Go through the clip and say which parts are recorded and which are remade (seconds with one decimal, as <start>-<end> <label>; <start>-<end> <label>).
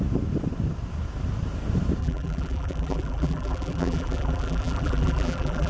0.0-2.0 recorded; 2.0-5.7 remade